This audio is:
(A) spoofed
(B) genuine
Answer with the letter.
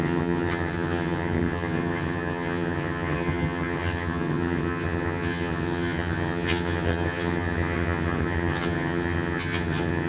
A